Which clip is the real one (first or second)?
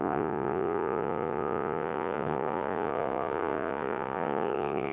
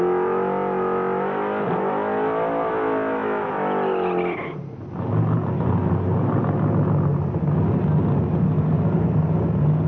second